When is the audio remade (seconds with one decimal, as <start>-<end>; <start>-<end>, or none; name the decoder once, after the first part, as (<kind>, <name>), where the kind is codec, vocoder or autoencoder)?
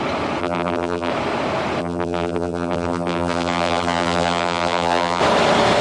0.4-1.1 (vocoder, BigVGAN v2); 1.8-5.2